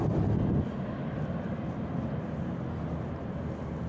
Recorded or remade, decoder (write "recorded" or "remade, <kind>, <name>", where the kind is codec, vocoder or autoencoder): recorded